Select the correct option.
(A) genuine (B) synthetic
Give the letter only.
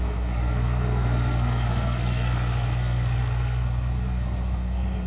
B